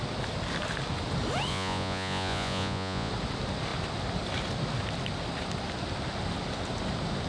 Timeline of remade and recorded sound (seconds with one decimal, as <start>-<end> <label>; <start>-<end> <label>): 0.0-1.5 recorded; 1.5-3.1 remade; 3.1-7.3 recorded